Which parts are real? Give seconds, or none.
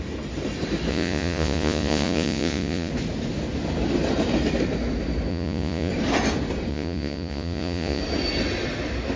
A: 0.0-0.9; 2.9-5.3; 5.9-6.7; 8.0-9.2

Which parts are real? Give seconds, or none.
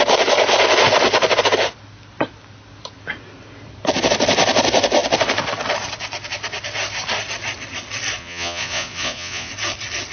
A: 0.0-8.2; 9.5-10.1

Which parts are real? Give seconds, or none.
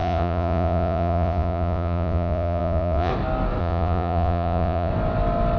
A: 3.1-3.6; 4.9-5.6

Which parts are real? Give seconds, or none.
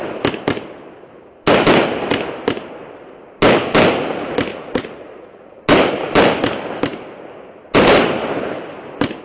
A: 0.0-4.5; 5.6-9.2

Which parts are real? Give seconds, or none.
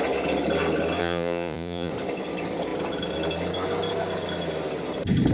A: 0.0-1.0; 1.9-5.3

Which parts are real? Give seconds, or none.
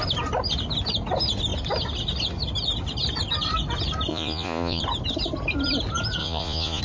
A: 0.0-4.1; 4.8-6.2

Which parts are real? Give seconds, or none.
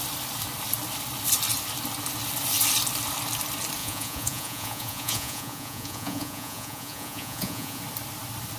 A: 0.0-3.8; 7.8-8.6